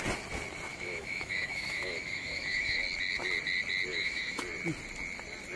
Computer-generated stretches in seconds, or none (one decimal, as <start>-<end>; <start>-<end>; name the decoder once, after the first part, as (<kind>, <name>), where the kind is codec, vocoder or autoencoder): 0.7-2.8 (autoencoder, DAC-VAE); 3.9-4.4